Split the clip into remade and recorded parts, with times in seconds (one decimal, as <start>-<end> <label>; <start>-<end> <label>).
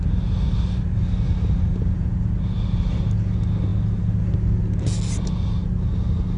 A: 0.0-6.4 recorded